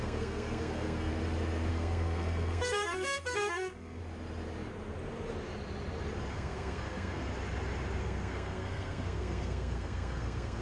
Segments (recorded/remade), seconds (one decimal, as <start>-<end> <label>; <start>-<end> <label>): 0.0-1.1 remade; 1.1-1.7 recorded; 1.7-4.0 remade; 4.0-6.3 recorded; 6.3-7.3 remade; 7.3-8.0 recorded; 8.0-10.6 remade